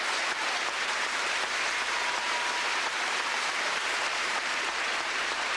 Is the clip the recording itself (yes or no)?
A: no